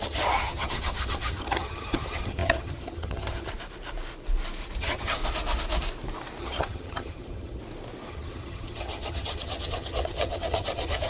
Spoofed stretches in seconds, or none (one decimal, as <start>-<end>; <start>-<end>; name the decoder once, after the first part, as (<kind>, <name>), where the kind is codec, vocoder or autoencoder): 0.0-3.5 (vocoder, HiFi-GAN); 4.8-5.2; 6.4-7.6; 8.1-11.1

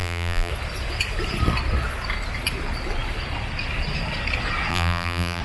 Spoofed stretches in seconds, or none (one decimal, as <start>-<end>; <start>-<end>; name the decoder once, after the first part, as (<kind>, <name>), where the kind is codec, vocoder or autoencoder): 0.0-0.5 (vocoder, BigVGAN v2); 4.7-5.4